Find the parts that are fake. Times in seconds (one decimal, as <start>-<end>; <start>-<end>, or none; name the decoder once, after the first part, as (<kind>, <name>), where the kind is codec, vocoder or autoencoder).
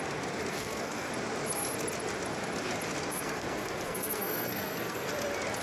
0.5-1.1 (codec, SNAC); 3.1-5.1